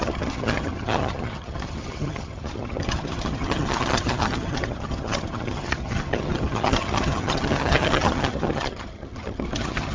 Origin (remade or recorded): remade